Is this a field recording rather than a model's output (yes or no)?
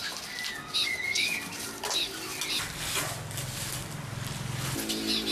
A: yes